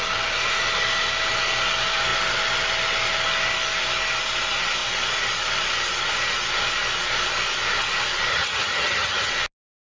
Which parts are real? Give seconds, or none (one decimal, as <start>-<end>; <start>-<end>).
0.0-8.3; 9.3-9.9

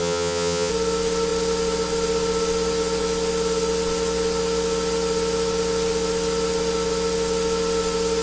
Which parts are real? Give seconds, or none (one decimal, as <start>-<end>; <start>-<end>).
0.7-8.2